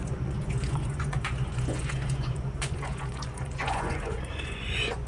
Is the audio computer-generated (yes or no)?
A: yes